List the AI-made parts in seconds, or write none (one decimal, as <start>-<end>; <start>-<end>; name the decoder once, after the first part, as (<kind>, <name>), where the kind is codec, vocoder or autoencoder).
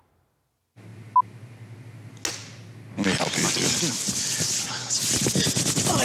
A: none